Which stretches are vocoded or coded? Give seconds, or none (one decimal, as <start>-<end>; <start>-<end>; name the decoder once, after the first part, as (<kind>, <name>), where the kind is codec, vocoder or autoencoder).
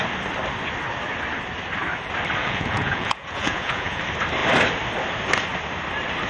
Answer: 2.4-4.0 (vocoder, Vocos)